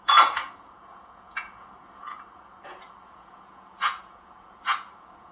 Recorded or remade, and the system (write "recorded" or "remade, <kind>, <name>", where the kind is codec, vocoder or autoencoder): remade, vocoder, Vocos